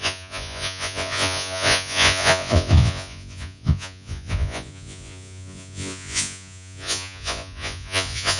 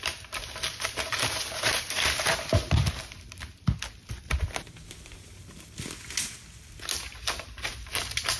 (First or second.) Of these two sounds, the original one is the second